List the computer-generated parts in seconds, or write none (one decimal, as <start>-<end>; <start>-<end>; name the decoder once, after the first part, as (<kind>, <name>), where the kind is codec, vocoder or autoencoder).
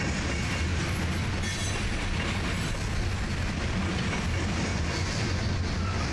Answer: 4.7-5.4 (vocoder, Vocos)